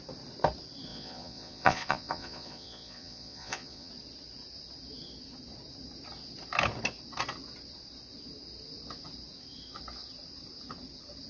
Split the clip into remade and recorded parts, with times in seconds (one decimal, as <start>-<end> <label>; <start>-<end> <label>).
0.0-0.9 recorded; 0.9-3.9 remade; 3.9-11.3 recorded